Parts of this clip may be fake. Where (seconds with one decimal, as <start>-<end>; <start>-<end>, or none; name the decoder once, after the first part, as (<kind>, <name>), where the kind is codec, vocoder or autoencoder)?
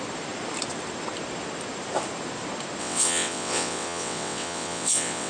2.8-5.3 (vocoder, WaveNeXt)